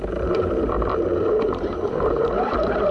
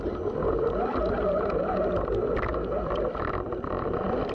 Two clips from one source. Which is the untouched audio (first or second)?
second